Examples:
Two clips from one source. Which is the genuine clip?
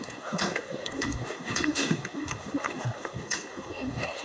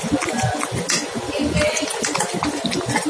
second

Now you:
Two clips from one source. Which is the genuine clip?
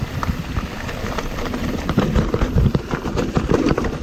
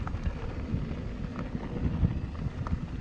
second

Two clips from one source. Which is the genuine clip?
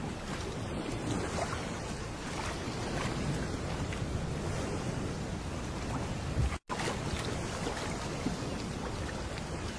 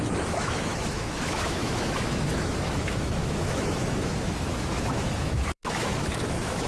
first